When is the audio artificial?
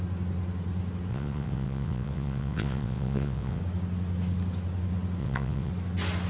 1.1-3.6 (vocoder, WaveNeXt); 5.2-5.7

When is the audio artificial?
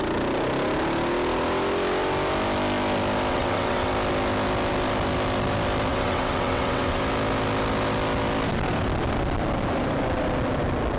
3.3-3.9 (vocoder, WaveNeXt); 5.9-7.0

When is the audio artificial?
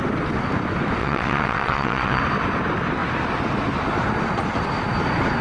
1.0-2.2 (vocoder, WaveNeXt)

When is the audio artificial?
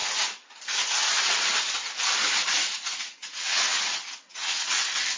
2.9-4.8 (vocoder, WaveNeXt)